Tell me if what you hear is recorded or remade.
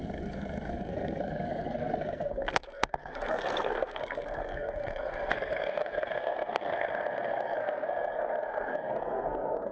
remade